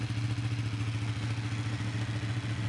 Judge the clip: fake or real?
real